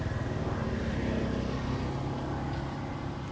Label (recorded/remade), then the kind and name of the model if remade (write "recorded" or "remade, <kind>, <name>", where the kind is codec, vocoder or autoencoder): recorded